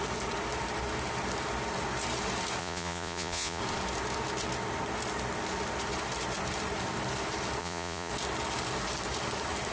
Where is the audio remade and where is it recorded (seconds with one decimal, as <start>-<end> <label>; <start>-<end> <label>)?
0.0-2.6 recorded; 2.6-3.6 remade; 3.6-7.6 recorded; 7.6-8.1 remade; 8.1-9.7 recorded